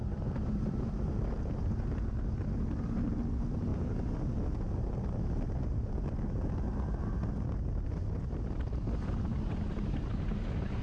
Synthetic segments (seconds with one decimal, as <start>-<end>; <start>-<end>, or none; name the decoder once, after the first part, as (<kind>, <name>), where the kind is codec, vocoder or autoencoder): 0.0-1.9 (vocoder, BigVGAN v2)